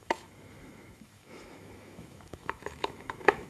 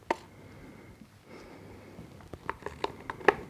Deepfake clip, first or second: first